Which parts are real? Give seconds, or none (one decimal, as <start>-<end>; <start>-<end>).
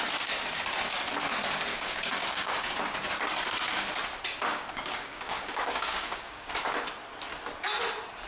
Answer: 0.0-1.7; 2.7-4.5; 6.5-8.3